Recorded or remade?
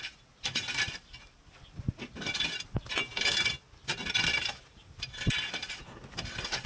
recorded